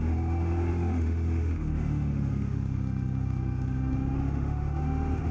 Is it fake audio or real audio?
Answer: fake